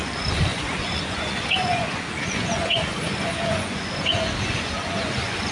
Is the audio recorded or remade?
remade